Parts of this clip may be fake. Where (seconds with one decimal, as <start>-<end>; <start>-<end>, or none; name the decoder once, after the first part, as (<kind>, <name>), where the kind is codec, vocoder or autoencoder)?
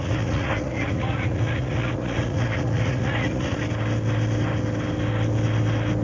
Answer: 0.0-3.6 (vocoder, Vocos)